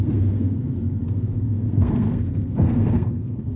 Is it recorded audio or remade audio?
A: remade